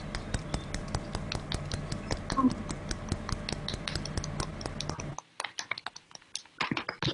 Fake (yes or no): no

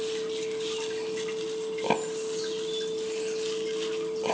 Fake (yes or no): no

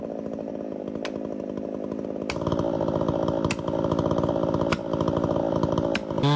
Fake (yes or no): no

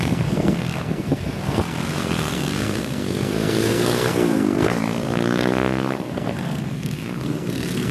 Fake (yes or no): yes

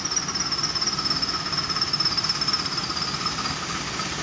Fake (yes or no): no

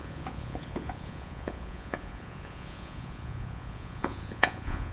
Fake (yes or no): yes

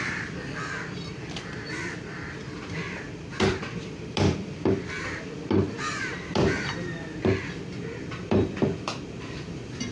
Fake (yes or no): yes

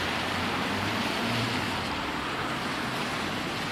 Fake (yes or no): no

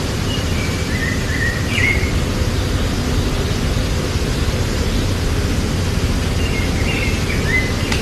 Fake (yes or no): no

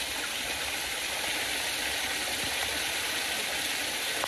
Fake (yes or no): no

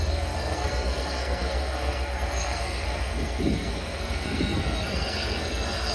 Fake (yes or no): yes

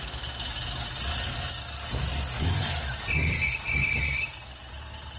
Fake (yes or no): no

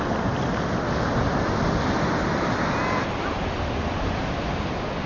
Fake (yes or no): no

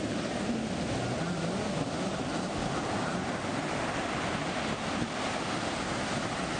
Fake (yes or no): no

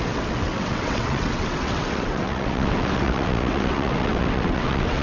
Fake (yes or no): yes